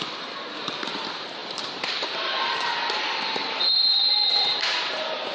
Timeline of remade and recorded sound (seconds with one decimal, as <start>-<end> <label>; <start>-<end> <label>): 0.0-5.3 remade